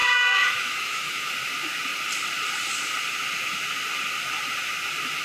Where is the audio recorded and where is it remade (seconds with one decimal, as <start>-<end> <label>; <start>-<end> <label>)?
0.0-1.3 remade; 1.3-5.2 recorded